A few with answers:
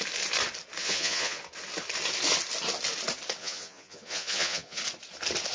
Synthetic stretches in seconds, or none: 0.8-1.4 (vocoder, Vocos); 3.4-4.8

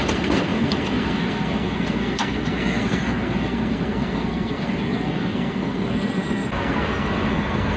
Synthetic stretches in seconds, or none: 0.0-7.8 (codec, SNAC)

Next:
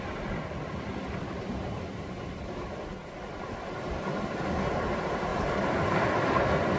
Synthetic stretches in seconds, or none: none

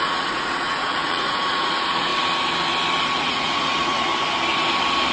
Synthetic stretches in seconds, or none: 0.0-2.1 (vocoder, Vocos); 3.2-4.1

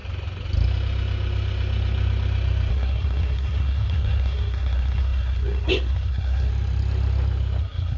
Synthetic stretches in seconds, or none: 2.7-6.5 (codec, SNAC); 7.6-8.0